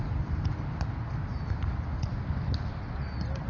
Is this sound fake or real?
real